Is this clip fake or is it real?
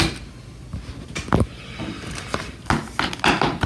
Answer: real